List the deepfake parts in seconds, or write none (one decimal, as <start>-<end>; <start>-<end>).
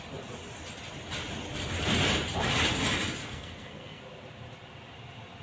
3.2-4.0